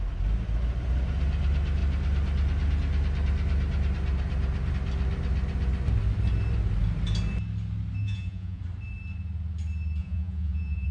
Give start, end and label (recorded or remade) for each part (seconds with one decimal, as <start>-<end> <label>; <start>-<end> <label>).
0.0-8.0 recorded; 8.0-8.6 remade; 8.6-10.0 recorded; 10.0-10.9 remade